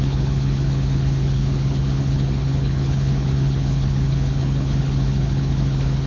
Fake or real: fake